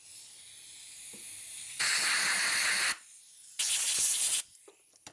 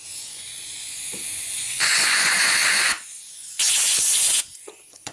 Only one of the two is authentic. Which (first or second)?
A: first